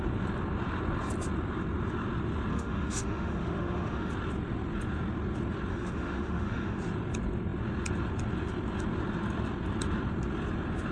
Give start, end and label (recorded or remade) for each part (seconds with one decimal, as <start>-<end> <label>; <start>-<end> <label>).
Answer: 0.0-2.5 recorded; 2.5-4.1 remade; 4.1-5.7 recorded; 5.7-6.8 remade; 6.8-10.9 recorded